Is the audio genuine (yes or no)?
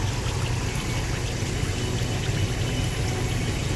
yes